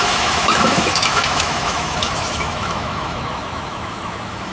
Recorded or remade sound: remade